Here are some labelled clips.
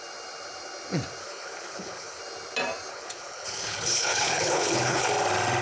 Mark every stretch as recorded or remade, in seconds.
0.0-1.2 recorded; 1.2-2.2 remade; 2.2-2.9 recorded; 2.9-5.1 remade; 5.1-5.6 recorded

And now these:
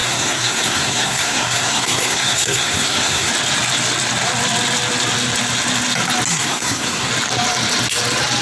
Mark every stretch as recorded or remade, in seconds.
0.0-3.3 remade; 3.3-6.3 recorded; 6.3-7.1 remade; 7.1-8.4 recorded

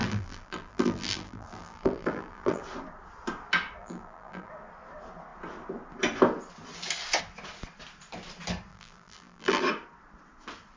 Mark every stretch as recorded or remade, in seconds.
0.0-2.6 remade; 2.6-3.8 recorded; 3.8-4.5 remade; 4.5-8.7 recorded; 8.7-9.6 remade; 9.6-10.8 recorded

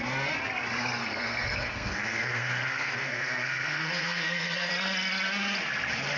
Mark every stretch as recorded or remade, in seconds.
0.0-1.0 recorded; 1.0-4.7 remade; 4.7-6.2 recorded

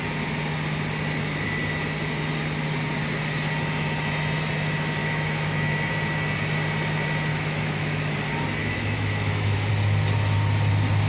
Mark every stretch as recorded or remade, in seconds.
0.0-5.0 recorded; 5.0-5.9 remade; 5.9-7.3 recorded; 7.3-8.1 remade; 8.1-8.6 recorded; 8.6-9.7 remade; 9.7-11.1 recorded

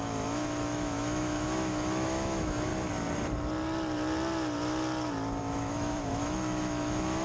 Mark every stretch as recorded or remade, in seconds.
0.0-2.7 remade; 2.7-5.4 recorded; 5.4-7.2 remade

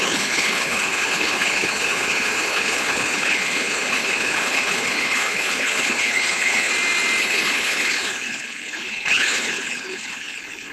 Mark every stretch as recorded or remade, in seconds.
0.0-6.7 remade; 6.7-7.2 recorded; 7.2-10.7 remade

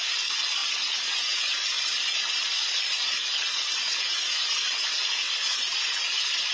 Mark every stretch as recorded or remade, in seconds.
0.0-6.5 recorded